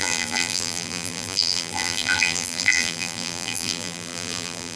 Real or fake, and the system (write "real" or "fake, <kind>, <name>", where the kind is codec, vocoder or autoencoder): fake, vocoder, BigVGAN v2